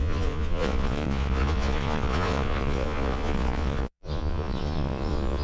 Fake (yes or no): yes